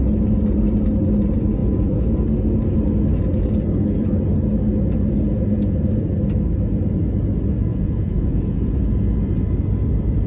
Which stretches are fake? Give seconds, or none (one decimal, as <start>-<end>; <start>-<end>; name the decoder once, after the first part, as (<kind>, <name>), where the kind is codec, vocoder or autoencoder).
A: 1.6-2.2 (vocoder, Vocos); 7.7-8.7